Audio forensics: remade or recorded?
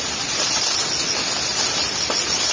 recorded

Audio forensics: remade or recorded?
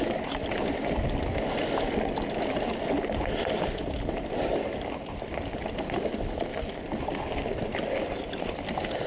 recorded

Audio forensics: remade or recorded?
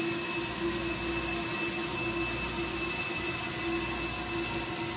recorded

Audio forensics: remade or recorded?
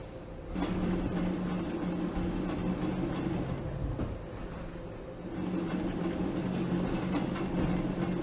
recorded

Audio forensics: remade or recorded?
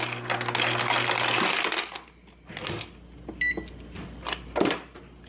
recorded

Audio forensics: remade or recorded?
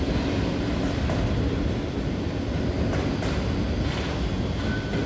recorded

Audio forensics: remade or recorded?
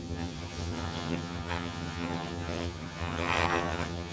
remade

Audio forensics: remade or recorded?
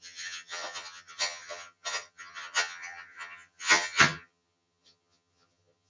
remade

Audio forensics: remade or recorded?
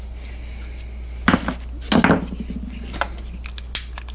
recorded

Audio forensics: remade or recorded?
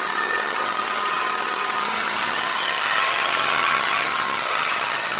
remade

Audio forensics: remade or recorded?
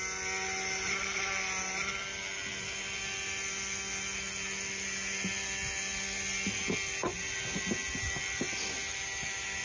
recorded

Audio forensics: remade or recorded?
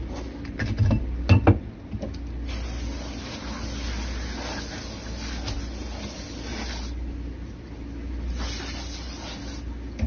recorded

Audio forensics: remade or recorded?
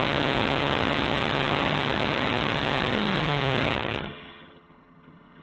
remade